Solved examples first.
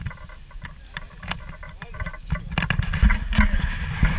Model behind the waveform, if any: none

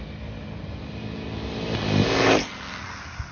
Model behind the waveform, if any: none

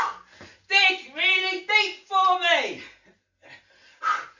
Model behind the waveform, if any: none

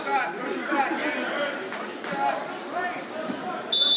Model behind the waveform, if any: none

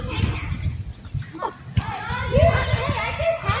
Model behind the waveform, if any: none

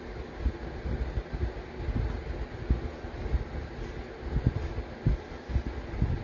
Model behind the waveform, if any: none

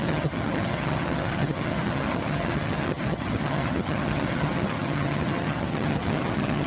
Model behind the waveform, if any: vocoder, HiFi-GAN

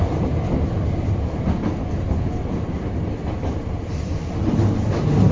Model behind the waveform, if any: none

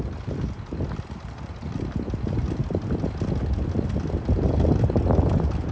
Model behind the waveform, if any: none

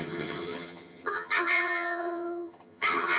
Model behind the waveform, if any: vocoder, HiFi-GAN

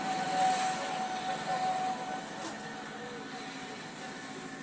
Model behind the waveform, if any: none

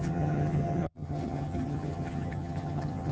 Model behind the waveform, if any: vocoder, HiFi-GAN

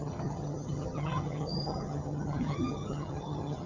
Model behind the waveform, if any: vocoder, HiFi-GAN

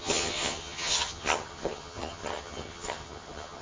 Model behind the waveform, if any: vocoder, HiFi-GAN